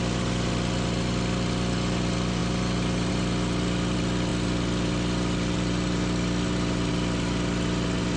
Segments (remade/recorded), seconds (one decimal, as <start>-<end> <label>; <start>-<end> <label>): 0.0-8.2 recorded